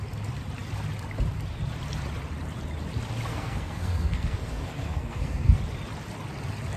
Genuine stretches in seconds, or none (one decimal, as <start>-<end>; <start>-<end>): 0.0-3.3; 5.6-6.8

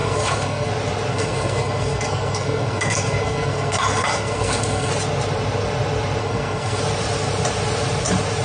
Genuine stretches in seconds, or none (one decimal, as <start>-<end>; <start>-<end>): 0.7-1.1; 4.9-6.2; 6.8-8.4